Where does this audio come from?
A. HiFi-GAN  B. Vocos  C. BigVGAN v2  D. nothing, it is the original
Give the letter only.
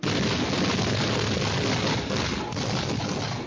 D